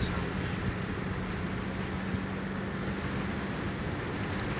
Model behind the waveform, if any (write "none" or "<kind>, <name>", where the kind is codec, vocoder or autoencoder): none